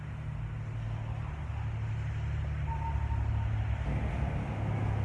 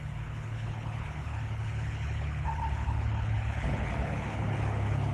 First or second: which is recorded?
first